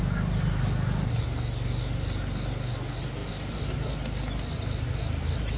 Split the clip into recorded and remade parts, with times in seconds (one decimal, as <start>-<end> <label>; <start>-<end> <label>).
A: 0.0-5.6 recorded